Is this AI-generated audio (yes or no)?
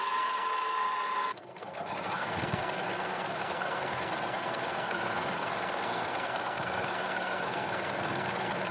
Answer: yes